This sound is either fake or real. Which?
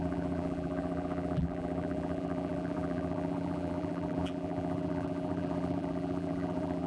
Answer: fake